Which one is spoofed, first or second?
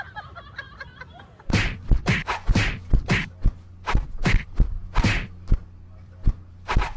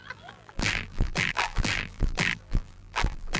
second